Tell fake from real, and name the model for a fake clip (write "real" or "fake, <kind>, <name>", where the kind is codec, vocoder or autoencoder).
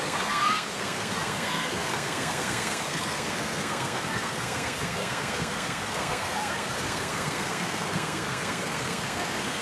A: fake, codec, SNAC